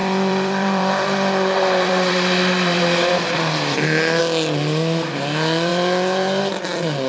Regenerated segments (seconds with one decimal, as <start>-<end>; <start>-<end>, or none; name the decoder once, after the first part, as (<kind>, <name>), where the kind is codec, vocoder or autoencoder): 0.0-4.2 (vocoder, BigVGAN v2); 5.7-6.4